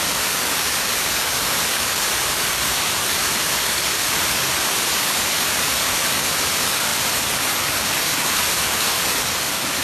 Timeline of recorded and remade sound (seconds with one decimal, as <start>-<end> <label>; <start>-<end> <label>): 0.0-9.8 remade